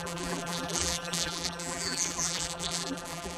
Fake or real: fake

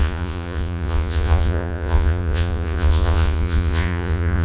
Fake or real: fake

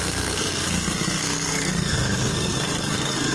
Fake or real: fake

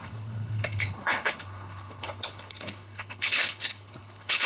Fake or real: fake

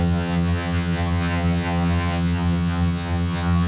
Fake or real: fake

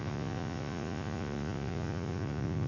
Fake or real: fake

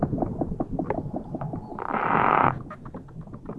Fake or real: real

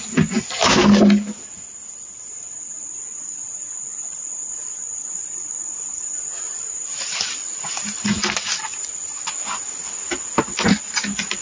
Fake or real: real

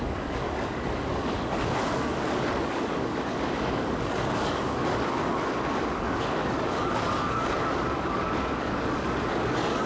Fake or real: fake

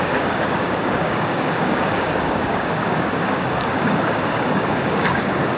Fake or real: fake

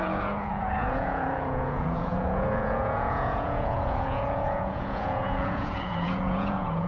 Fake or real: fake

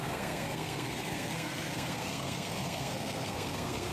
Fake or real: fake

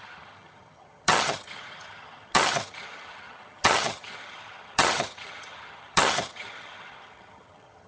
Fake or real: fake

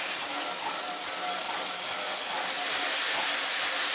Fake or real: real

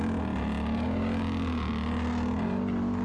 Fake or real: real